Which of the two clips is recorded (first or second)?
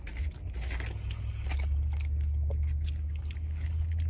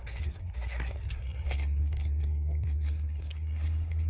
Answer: first